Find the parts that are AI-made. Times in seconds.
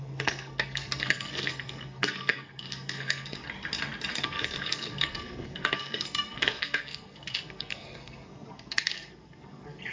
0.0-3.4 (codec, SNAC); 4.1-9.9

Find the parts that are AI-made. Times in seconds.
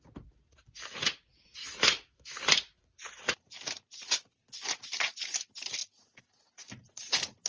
1.6-2.4 (autoencoder, DAC-VAE)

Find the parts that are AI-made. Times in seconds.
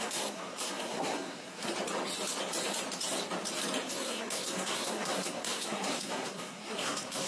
0.0-1.7 (codec, SNAC); 3.9-7.3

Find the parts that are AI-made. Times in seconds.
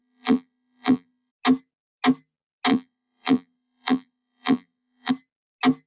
0.0-1.3 (vocoder, BigVGAN v2); 2.7-5.1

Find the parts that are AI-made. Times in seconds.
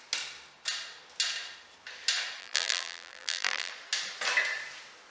2.4-3.7 (vocoder, BigVGAN v2)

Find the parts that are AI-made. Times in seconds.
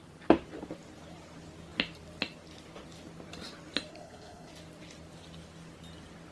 3.9-4.5 (codec, HILCodec)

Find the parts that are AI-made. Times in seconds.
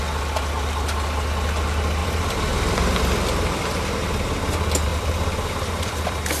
2.0-3.8 (vocoder, BigVGAN v2); 4.9-6.4